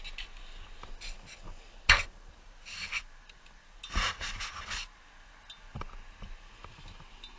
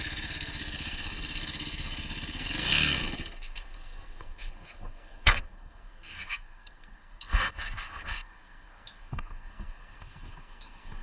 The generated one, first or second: second